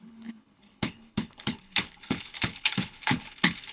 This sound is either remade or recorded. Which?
remade